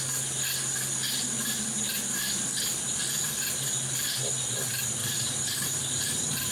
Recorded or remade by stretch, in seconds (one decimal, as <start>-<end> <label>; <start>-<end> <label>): 0.0-5.0 recorded; 5.0-6.5 remade